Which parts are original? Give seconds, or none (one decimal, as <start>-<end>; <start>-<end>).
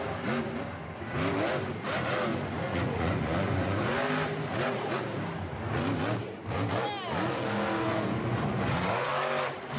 0.0-2.3; 4.0-7.9; 9.1-9.8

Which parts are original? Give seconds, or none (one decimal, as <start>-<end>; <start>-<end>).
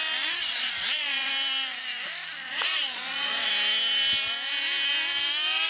0.0-0.4; 1.3-2.4; 3.5-5.7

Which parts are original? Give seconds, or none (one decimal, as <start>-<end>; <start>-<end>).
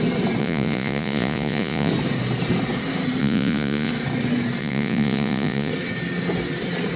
0.0-0.4; 1.9-3.2; 3.9-4.6; 5.7-7.0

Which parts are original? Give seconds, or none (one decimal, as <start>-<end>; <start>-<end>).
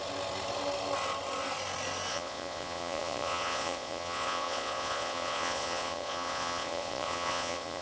0.0-2.1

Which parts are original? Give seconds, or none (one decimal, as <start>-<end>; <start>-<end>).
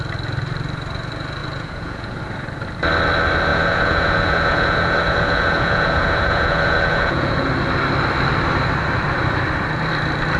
0.0-1.4; 2.2-3.5; 7.5-10.4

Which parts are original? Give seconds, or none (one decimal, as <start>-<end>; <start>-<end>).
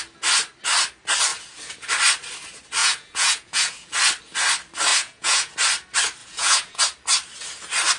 0.0-2.8; 3.9-4.9; 5.5-6.2; 6.8-8.0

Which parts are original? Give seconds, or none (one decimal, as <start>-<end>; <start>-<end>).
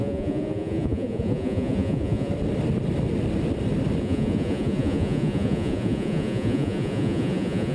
2.3-4.0